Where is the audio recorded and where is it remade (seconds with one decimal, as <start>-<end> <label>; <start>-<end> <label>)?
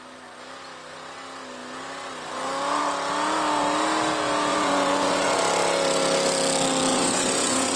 0.0-4.5 recorded; 4.5-5.4 remade; 5.4-6.9 recorded; 6.9-7.8 remade